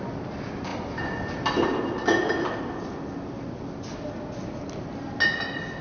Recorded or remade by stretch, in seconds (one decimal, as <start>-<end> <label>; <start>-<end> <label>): 0.0-5.8 recorded